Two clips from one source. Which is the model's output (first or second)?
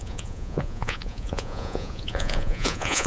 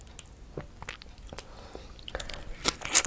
first